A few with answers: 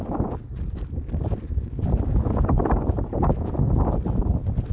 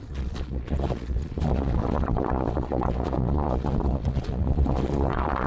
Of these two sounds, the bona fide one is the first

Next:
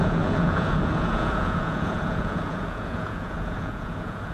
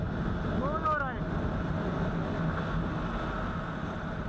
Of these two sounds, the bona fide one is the second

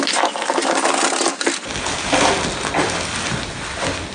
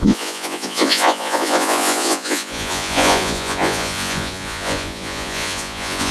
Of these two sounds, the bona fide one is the first